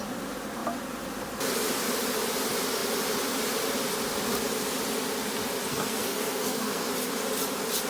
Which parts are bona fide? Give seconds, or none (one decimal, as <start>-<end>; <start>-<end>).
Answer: 0.0-5.7; 6.9-7.9

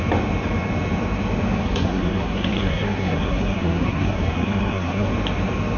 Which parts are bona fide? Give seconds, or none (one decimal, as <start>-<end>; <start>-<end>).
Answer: 0.0-1.6; 5.1-5.8